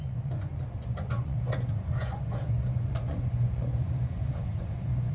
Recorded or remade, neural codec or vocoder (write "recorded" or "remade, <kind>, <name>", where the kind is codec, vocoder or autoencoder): remade, vocoder, Vocos